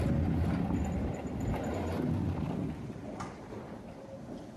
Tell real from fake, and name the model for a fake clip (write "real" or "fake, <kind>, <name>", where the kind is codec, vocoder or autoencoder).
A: real